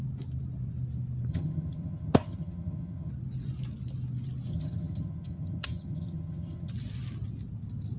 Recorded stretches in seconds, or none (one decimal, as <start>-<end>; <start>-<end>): 0.0-1.3; 3.1-4.5; 6.7-8.0

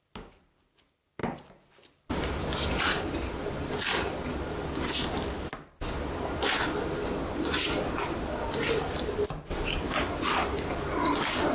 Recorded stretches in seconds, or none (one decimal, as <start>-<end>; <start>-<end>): 0.0-11.5

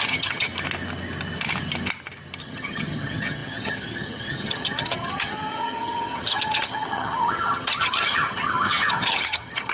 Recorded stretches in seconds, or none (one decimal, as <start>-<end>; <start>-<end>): 0.5-2.4

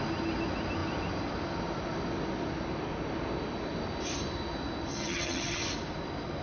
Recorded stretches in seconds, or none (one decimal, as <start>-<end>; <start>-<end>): 0.0-4.9; 5.6-6.4

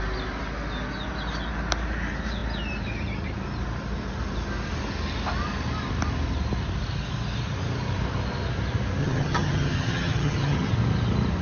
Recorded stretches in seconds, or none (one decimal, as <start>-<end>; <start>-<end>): 0.0-9.0; 10.7-11.4

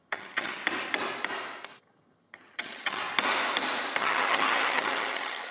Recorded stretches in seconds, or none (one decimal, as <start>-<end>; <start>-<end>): 0.6-1.8; 3.0-4.0

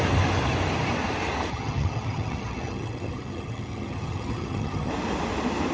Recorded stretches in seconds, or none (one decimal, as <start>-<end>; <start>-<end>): 0.0-1.5; 4.9-5.7

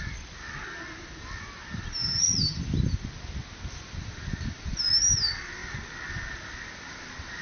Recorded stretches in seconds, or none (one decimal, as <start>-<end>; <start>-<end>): 0.0-2.0; 2.6-7.4